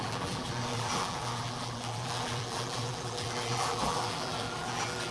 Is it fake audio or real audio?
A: fake